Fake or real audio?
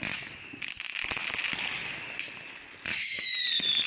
real